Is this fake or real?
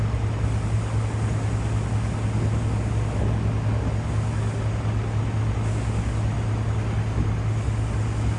real